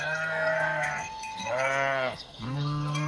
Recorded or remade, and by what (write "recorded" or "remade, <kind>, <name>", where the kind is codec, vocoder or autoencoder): remade, codec, SNAC